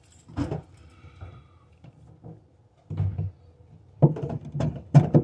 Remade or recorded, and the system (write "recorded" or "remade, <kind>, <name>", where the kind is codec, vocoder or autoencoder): recorded